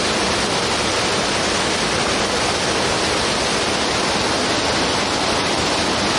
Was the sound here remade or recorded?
recorded